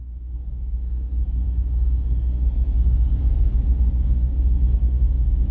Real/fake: fake